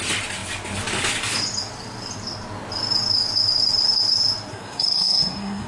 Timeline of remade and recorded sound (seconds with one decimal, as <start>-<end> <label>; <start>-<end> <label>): 0.0-4.5 recorded; 4.5-5.7 remade